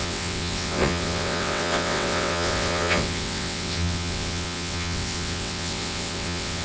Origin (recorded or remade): remade